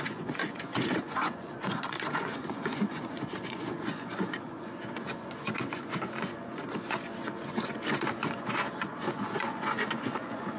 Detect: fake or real fake